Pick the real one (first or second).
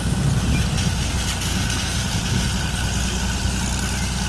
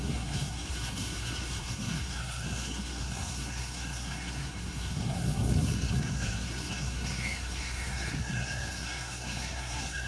first